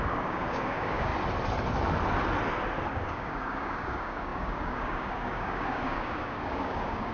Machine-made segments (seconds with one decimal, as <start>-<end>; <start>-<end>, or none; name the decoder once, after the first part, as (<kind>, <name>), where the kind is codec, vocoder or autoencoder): 0.0-1.1 (codec, DAC); 2.9-7.1